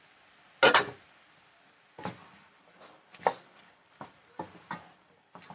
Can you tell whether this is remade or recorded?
recorded